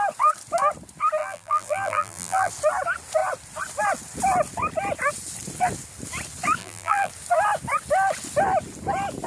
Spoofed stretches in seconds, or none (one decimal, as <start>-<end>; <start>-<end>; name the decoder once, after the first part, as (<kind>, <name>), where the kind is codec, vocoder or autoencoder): 1.2-2.5 (vocoder, BigVGAN v2); 6.6-7.1